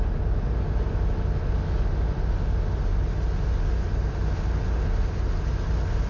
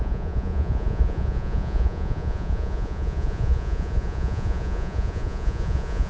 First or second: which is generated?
second